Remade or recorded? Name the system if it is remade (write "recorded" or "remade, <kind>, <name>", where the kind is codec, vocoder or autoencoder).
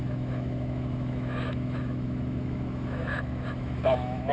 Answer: remade, autoencoder, DAC-VAE